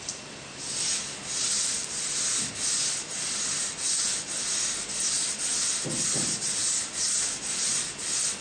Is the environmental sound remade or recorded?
recorded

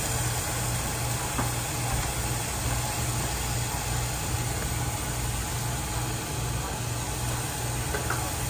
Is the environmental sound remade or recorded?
recorded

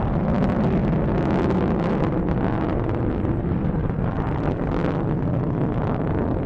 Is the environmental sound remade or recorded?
recorded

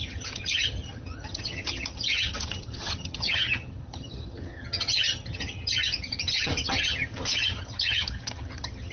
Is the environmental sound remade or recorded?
remade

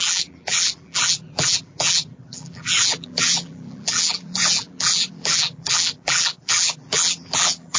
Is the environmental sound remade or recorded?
remade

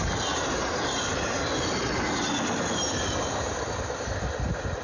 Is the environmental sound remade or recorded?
recorded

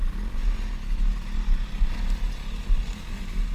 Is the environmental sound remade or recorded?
recorded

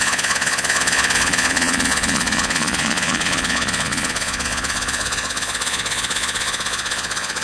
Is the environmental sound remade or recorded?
remade